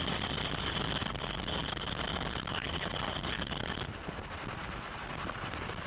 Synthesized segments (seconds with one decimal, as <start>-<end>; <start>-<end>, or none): none